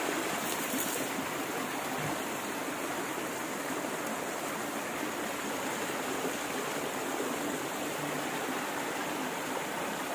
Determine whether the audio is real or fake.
real